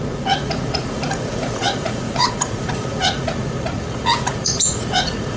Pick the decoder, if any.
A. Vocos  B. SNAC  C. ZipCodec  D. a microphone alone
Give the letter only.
A